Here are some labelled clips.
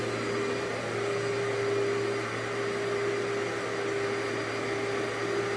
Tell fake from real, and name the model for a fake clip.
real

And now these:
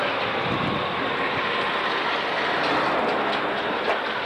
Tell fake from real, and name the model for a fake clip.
real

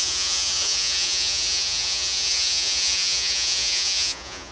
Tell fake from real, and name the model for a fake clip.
fake, vocoder, Vocos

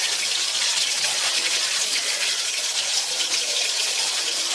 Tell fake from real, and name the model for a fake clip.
fake, vocoder, Vocos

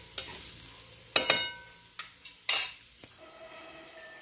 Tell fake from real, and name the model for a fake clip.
real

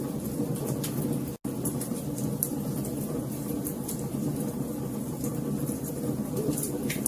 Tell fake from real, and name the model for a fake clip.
real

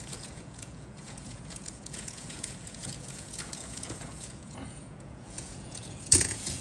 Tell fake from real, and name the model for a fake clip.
fake, vocoder, Vocos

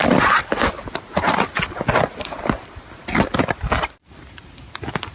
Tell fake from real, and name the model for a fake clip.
real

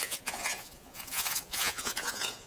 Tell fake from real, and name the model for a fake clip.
fake, vocoder, Vocos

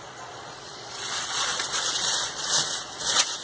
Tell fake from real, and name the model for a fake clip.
fake, vocoder, Vocos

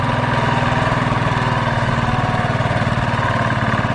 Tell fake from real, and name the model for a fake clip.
real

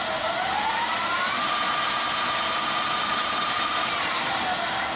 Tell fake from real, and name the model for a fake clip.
real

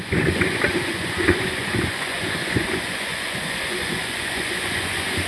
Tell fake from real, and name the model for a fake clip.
fake, vocoder, Vocos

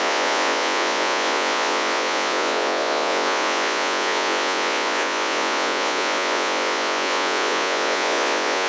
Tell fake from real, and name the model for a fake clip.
fake, vocoder, Vocos